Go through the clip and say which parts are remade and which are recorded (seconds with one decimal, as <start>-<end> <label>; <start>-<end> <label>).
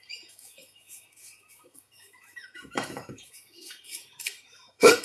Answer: 0.0-5.0 remade